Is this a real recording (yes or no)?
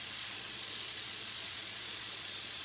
no